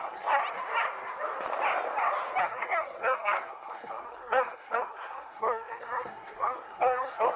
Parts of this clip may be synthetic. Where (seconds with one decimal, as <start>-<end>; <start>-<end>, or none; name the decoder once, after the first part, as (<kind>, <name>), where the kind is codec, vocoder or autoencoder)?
0.0-0.4 (codec, SNAC); 2.4-7.4